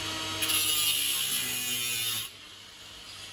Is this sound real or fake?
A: real